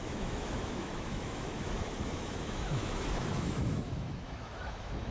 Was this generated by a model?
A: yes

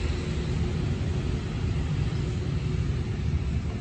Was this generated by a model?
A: no